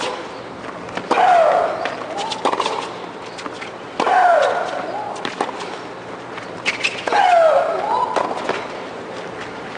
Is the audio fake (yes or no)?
no